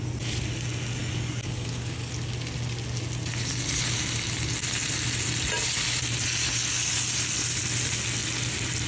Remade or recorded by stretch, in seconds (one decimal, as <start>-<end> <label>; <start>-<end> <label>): 0.0-1.0 recorded; 1.0-2.1 remade; 2.1-6.4 recorded; 6.4-7.0 remade; 7.0-8.9 recorded